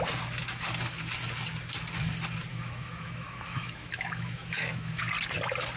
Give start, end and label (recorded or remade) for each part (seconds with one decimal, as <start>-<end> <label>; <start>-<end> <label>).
0.0-2.5 recorded; 2.5-5.0 remade; 5.0-5.8 recorded